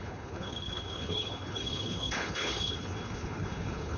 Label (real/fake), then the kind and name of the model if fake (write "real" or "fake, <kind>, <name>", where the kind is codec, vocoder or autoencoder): fake, codec, HILCodec